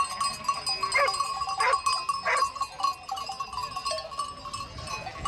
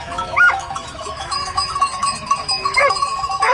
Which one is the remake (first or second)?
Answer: second